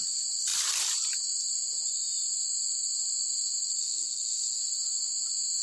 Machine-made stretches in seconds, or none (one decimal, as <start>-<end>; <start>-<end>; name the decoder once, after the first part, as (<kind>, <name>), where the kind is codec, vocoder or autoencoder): 3.8-4.6 (codec, SNAC)